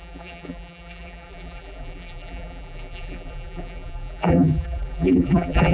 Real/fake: fake